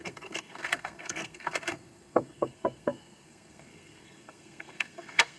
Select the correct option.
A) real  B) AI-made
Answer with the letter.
B